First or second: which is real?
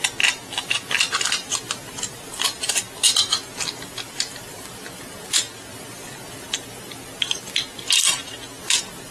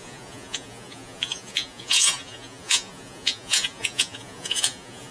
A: first